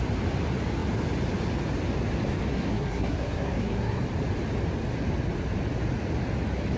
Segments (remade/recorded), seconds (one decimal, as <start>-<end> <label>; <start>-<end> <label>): 0.0-2.5 recorded; 2.5-4.0 remade; 4.0-6.8 recorded